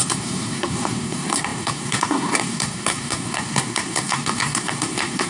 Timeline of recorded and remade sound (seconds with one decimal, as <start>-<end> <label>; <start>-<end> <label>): 0.0-5.3 remade